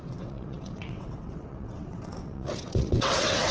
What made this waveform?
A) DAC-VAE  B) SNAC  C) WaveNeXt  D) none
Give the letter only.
C